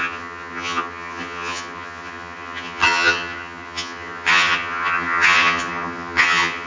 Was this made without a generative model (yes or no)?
no